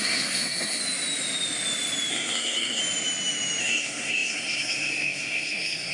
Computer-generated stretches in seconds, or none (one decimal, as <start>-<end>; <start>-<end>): 0.0-0.8; 2.1-2.8; 3.6-5.9